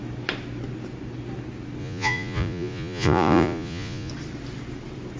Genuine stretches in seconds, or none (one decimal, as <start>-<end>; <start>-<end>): 0.0-1.8; 4.1-5.2